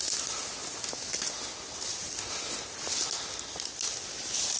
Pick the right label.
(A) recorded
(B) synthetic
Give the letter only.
A